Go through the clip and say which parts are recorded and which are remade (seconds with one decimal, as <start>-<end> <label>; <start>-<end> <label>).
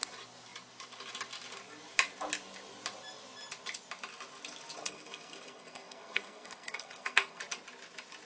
0.0-4.8 recorded; 4.8-7.4 remade; 7.4-8.3 recorded